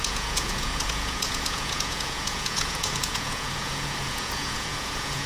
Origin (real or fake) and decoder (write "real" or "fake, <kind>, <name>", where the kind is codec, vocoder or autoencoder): fake, vocoder, Vocos